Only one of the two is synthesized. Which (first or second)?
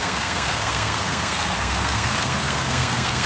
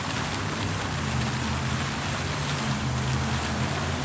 first